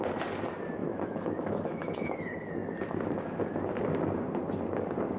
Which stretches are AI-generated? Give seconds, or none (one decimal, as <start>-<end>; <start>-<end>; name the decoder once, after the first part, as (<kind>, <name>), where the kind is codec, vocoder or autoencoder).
0.8-2.2 (autoencoder, DAC-VAE)